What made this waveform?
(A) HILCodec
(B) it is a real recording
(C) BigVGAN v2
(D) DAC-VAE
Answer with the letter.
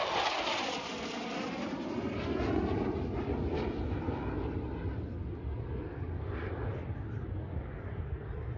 B